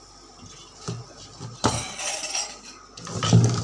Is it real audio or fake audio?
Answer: real